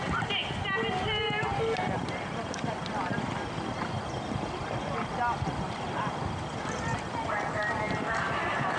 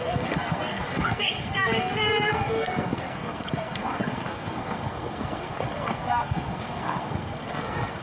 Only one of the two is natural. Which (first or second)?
first